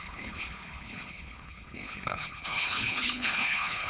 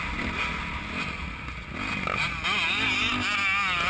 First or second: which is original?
second